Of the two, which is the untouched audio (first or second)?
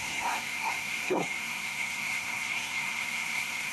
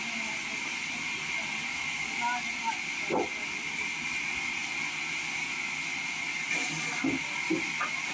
second